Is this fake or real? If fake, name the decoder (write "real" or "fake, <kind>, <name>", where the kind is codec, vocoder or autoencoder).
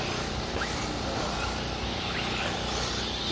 real